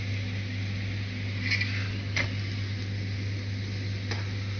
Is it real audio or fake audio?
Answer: real